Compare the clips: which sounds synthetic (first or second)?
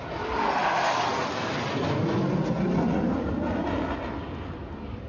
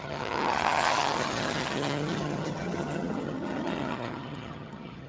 second